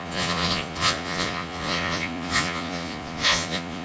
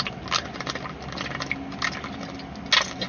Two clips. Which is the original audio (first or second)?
second